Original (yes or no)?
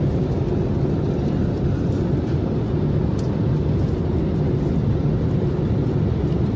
yes